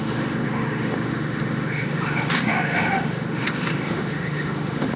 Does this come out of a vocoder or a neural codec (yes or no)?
yes